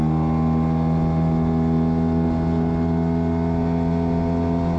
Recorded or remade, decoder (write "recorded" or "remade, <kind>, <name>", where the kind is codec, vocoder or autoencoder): recorded